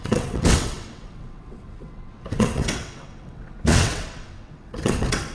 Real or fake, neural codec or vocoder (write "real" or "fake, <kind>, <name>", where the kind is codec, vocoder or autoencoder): fake, vocoder, WaveNeXt